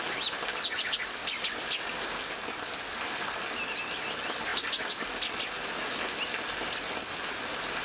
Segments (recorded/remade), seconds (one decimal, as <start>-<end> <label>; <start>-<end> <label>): 0.0-7.8 recorded